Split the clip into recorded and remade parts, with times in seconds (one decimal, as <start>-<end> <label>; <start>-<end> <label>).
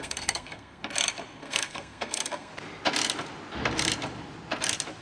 0.0-0.8 remade; 0.8-1.4 recorded; 1.4-2.5 remade; 2.5-5.0 recorded